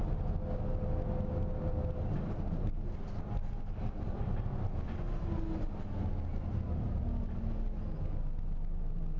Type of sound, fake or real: real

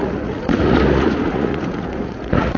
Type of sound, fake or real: fake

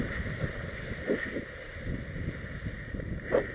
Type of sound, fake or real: real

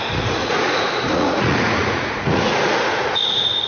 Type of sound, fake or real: fake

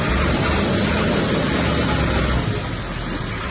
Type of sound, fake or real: real